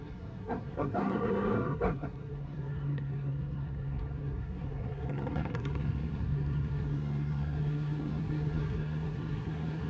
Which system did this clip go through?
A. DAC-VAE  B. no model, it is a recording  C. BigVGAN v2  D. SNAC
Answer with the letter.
D